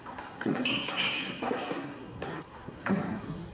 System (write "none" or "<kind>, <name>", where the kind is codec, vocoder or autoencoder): codec, SNAC